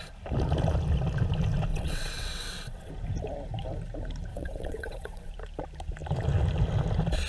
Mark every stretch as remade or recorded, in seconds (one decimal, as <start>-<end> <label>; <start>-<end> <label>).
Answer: 0.0-1.7 recorded; 1.7-2.9 remade; 2.9-4.3 recorded; 4.3-5.3 remade; 5.3-7.3 recorded